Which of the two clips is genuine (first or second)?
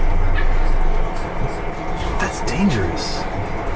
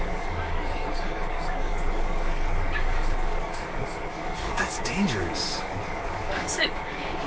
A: first